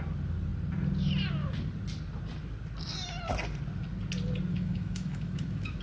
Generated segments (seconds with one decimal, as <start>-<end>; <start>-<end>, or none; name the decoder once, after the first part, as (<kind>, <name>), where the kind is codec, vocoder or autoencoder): 4.5-5.8 (autoencoder, DAC-VAE)